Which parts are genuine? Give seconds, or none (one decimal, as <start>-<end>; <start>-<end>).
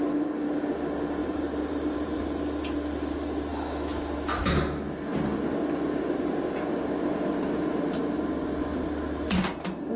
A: 0.0-1.2; 2.4-10.0